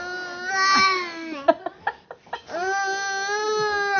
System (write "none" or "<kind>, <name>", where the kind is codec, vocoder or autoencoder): none